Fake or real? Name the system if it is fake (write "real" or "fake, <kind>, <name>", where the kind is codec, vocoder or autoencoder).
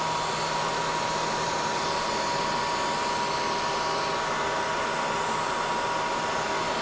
real